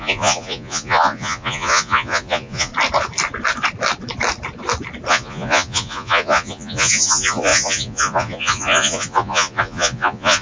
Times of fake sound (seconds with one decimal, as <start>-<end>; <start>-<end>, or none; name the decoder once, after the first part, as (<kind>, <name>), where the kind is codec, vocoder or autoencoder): 0.0-2.7 (vocoder, Vocos); 5.1-10.4